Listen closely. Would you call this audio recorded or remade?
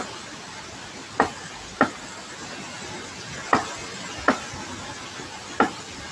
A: recorded